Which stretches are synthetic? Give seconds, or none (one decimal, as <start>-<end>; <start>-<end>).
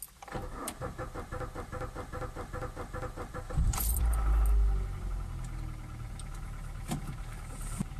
0.6-4.0